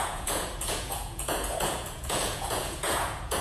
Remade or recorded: remade